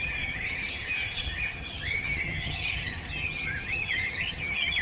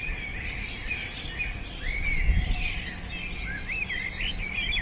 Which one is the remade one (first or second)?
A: first